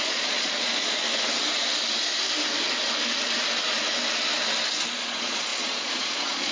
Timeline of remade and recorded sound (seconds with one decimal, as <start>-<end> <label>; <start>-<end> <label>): 0.0-1.0 remade; 1.0-4.9 recorded; 4.9-6.5 remade